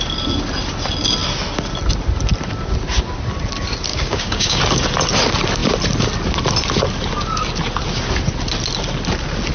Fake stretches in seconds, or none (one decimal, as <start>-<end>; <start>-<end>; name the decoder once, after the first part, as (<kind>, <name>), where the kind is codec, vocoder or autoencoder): 3.9-4.6 (codec, DAC)